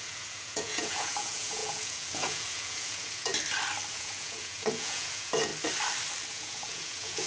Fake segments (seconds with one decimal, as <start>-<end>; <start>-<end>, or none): 0.0-3.3; 3.9-5.5; 6.3-7.3